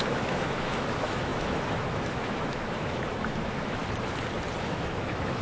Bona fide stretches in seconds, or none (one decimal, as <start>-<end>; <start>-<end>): 3.8-4.6

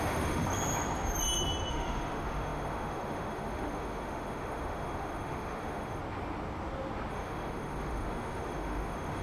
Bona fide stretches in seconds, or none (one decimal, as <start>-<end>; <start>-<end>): 0.5-1.7; 6.0-7.1

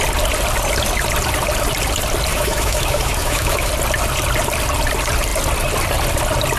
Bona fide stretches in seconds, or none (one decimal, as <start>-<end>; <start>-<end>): 0.0-2.3; 3.7-6.6

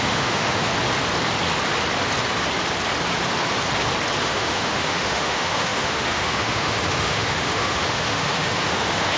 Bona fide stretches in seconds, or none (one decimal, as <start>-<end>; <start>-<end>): 0.7-4.2

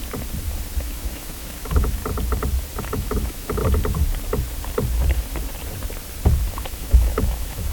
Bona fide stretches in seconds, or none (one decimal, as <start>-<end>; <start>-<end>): 0.0-0.8; 2.0-2.8; 3.6-6.5

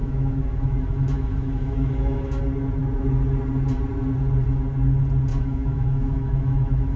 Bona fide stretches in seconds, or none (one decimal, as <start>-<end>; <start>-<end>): 2.4-5.3